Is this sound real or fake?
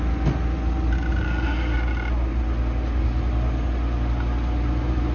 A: real